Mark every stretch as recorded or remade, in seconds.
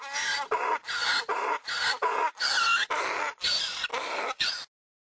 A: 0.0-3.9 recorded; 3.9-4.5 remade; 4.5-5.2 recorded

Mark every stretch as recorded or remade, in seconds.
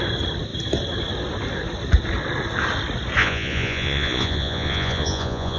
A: 0.0-3.2 recorded; 3.2-5.6 remade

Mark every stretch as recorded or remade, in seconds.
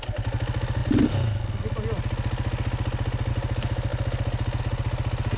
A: 0.0-5.4 recorded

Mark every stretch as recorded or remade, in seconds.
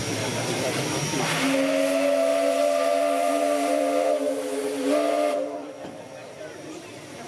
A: 0.0-2.3 recorded; 2.3-5.7 remade; 5.7-6.2 recorded; 6.2-7.3 remade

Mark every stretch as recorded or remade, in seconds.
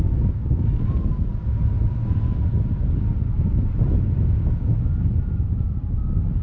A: 0.0-6.4 recorded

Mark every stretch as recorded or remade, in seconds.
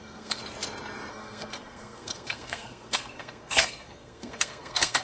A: 0.0-0.4 remade; 0.4-1.1 recorded; 1.1-5.0 remade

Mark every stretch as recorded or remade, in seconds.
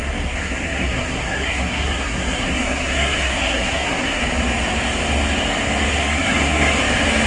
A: 0.0-4.2 remade; 4.2-6.0 recorded; 6.0-6.8 remade; 6.8-7.3 recorded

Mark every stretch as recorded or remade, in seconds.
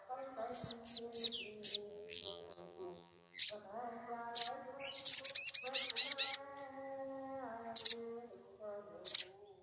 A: 0.0-1.9 recorded; 1.9-3.4 remade; 3.4-9.6 recorded